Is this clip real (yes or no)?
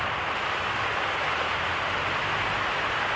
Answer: yes